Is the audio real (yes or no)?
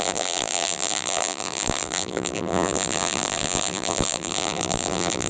no